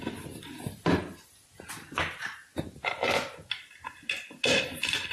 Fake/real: real